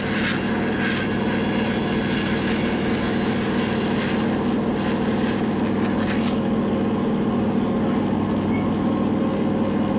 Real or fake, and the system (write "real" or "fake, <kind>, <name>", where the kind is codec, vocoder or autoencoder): real